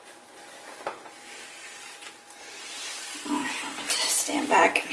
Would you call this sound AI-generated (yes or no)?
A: no